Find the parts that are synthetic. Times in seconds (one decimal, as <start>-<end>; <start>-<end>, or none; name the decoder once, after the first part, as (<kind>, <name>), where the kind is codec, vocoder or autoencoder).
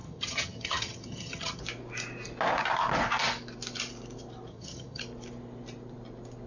0.0-1.6 (vocoder, HiFi-GAN); 4.5-5.0